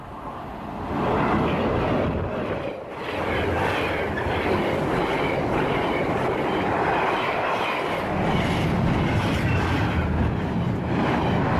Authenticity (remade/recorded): recorded